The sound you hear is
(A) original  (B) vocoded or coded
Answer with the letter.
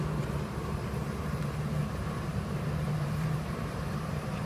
B